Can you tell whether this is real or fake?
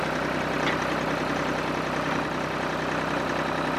real